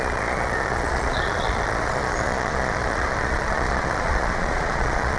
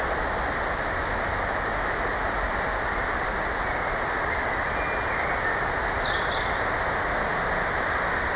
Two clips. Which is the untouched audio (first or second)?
second